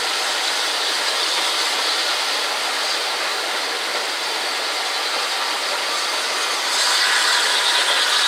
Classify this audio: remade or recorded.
recorded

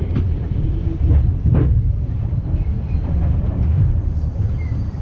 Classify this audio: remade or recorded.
remade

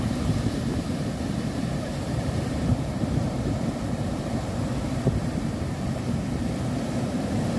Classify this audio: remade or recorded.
remade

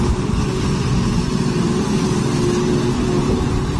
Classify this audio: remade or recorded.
recorded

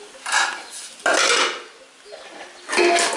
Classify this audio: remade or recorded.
recorded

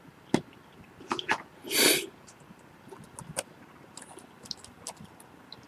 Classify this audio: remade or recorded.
recorded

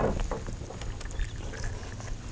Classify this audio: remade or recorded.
recorded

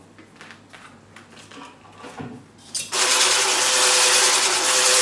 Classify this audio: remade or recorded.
recorded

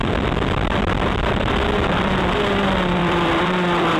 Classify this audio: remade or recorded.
remade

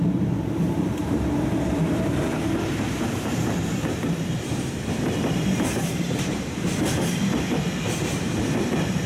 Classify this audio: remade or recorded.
remade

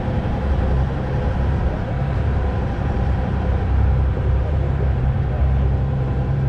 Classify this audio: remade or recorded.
remade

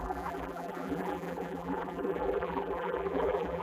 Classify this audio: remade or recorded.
remade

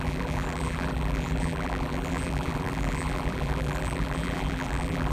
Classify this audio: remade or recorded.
remade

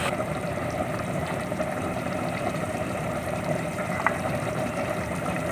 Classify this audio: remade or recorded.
remade